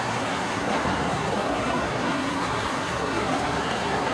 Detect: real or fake fake